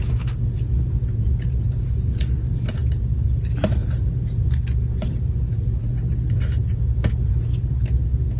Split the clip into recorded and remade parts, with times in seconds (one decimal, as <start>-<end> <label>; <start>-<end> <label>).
0.0-2.8 remade; 2.8-3.9 recorded; 3.9-5.9 remade; 5.9-6.6 recorded; 6.6-7.5 remade; 7.5-8.4 recorded

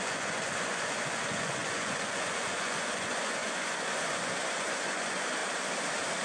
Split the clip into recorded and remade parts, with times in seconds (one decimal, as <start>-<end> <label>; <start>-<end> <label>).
0.0-5.4 remade; 5.4-6.2 recorded